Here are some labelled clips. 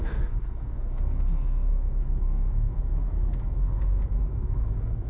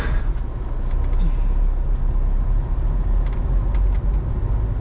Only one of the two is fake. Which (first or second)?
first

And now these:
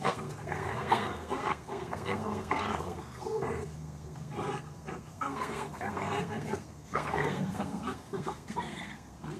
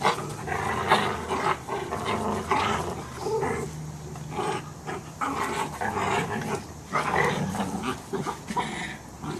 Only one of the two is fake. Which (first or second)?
first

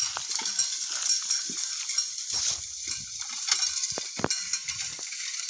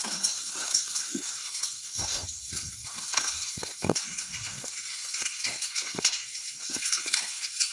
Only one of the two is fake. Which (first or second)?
second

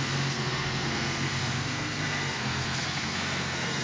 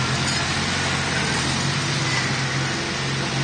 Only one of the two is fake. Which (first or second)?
first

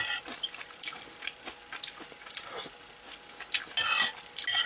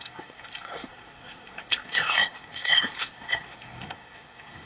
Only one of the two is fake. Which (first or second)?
second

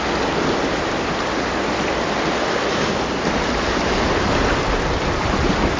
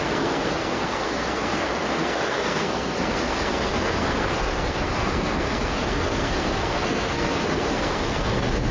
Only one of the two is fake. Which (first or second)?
second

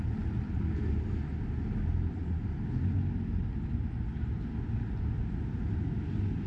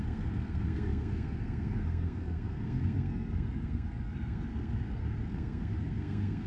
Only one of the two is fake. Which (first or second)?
second